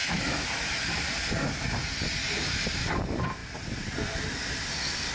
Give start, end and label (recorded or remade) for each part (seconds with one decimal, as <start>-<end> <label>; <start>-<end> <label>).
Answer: 0.0-0.8 remade; 0.8-5.1 recorded